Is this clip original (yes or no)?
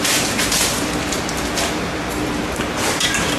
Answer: no